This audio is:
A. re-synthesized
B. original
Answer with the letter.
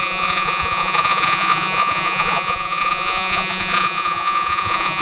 A